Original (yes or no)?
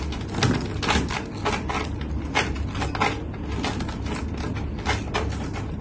yes